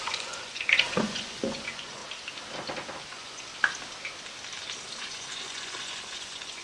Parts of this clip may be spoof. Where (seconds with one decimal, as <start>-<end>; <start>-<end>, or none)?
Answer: 0.0-2.0; 3.1-3.5; 5.0-6.6